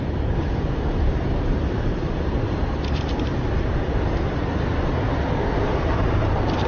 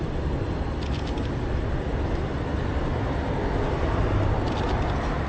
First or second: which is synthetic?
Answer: first